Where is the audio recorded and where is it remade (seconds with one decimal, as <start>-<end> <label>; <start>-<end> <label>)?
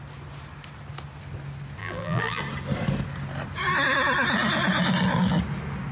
0.0-1.8 recorded; 1.8-2.4 remade; 2.4-5.9 recorded